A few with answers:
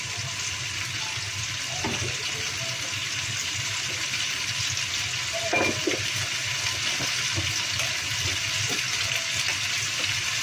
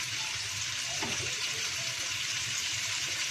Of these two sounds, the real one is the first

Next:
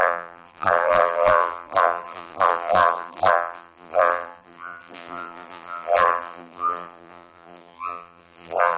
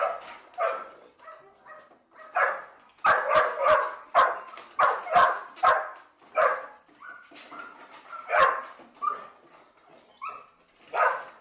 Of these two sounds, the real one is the second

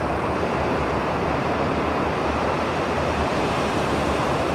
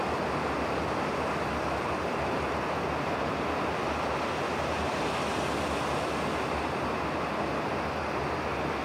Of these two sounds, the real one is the second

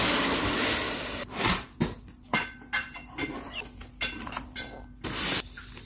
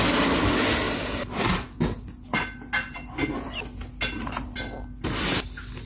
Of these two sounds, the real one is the second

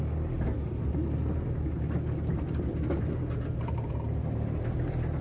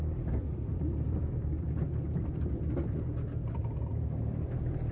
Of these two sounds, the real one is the first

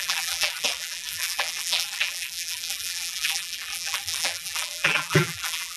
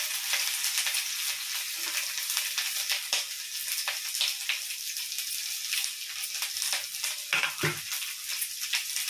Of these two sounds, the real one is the second